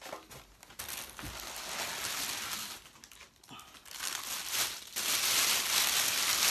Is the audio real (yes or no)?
yes